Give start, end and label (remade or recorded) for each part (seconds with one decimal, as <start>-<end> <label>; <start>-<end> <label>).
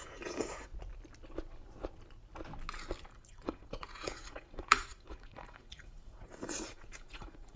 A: 0.0-0.7 remade; 0.7-3.1 recorded; 3.1-7.6 remade